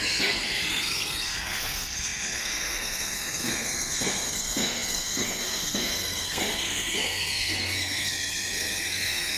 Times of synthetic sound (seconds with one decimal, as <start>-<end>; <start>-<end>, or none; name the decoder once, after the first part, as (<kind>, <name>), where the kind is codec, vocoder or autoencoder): 0.0-9.4 (codec, SNAC)